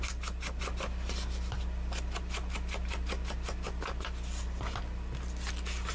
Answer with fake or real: real